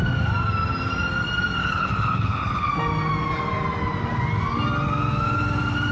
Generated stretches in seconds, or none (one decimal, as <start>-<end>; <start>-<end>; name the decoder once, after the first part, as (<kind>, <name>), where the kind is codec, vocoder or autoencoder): 1.6-2.7 (codec, HILCodec)